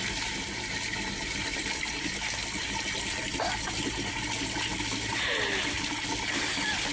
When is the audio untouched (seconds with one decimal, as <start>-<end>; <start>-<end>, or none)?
0.0-6.9